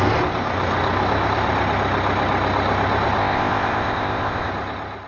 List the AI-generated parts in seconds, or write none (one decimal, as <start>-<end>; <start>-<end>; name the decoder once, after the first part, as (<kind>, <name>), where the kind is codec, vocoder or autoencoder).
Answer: 3.2-4.5 (codec, ZipCodec)